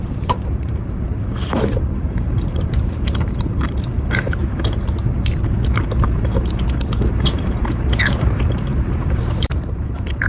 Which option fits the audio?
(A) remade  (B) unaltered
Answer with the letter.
A